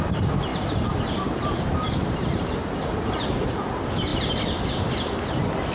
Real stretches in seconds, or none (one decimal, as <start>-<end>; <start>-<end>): 0.0-0.5; 2.5-5.7